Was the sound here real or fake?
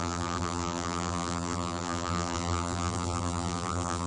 fake